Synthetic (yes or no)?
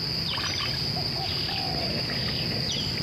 no